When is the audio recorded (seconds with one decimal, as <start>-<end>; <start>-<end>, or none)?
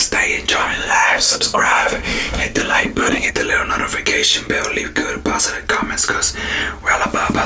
0.0-0.6; 3.3-7.5